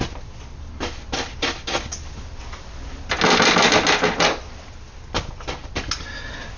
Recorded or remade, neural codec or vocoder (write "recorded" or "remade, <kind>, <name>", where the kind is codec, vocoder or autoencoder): recorded